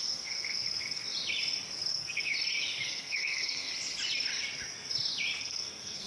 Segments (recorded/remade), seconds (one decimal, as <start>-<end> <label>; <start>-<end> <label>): 0.0-1.0 remade; 1.0-1.9 recorded; 1.9-2.3 remade; 2.3-2.9 recorded; 2.9-3.7 remade; 3.7-5.4 recorded; 5.4-6.1 remade

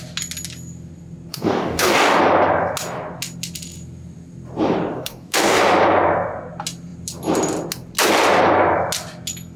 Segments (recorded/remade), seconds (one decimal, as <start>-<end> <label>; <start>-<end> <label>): 0.0-1.3 recorded; 1.3-2.2 remade; 2.2-4.9 recorded; 4.9-5.6 remade; 5.6-9.6 recorded

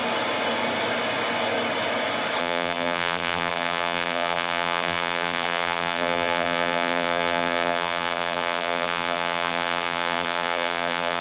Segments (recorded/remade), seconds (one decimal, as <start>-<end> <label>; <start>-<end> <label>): 0.0-2.4 recorded; 2.4-11.2 remade

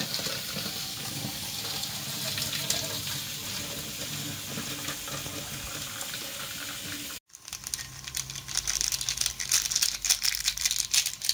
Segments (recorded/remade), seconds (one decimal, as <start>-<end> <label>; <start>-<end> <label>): 0.0-0.9 recorded; 0.9-1.6 remade; 1.6-11.3 recorded

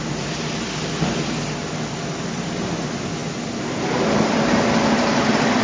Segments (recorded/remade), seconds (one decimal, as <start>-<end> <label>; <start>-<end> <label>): 0.0-5.6 recorded

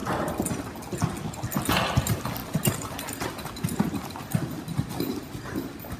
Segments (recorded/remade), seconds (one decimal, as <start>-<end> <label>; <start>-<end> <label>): 0.0-6.0 recorded

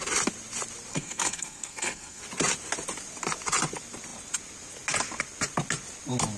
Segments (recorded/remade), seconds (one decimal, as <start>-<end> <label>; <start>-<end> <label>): 0.0-0.9 recorded; 0.9-2.2 remade; 2.2-6.4 recorded